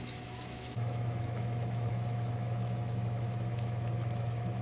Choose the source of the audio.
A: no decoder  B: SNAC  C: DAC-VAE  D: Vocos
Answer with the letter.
C